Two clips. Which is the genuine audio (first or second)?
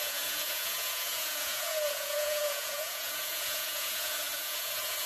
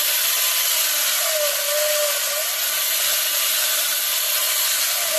second